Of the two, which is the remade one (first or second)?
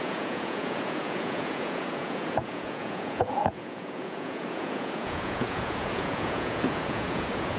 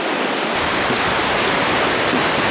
first